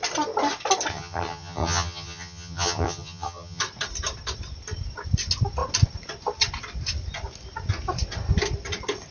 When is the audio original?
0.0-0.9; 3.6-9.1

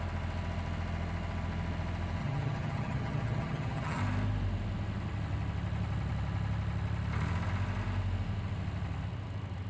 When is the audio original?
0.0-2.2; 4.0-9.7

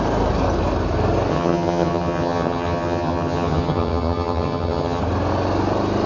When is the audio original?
0.0-1.3; 5.0-6.1

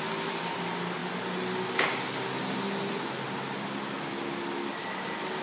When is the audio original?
0.0-5.4

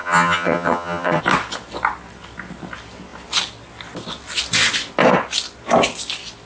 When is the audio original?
1.2-6.5

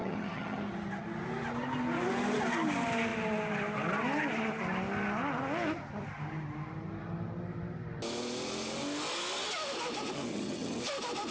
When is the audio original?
0.6-10.3; 10.8-11.3